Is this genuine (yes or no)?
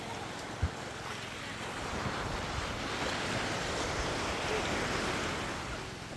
yes